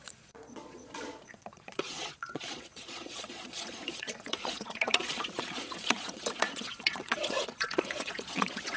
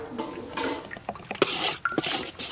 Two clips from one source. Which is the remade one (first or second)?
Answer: first